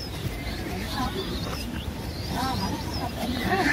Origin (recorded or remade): remade